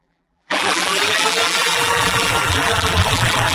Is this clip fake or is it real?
fake